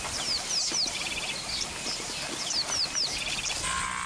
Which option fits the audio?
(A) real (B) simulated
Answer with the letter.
A